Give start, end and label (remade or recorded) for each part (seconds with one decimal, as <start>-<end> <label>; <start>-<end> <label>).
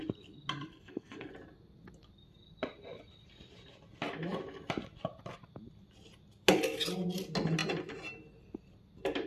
0.0-0.7 recorded; 0.7-1.3 remade; 1.3-9.3 recorded